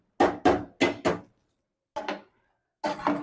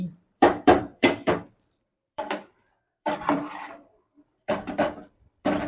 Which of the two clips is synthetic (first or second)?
second